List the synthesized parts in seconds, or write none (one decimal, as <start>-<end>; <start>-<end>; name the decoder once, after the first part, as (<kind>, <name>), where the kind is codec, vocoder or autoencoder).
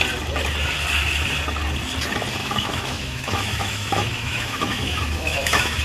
2.4-5.8 (autoencoder, DAC-VAE)